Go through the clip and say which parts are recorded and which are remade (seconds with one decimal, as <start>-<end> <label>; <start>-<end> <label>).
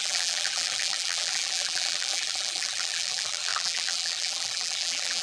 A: 0.0-5.2 remade